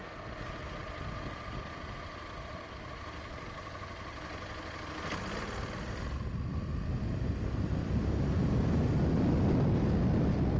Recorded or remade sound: recorded